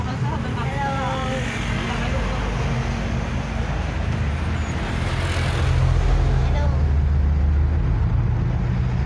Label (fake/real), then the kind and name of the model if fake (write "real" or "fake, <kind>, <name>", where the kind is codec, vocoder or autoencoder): real